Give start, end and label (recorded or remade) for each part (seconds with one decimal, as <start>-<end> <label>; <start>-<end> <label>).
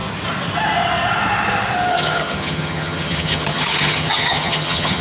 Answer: 0.0-1.9 recorded; 1.9-5.0 remade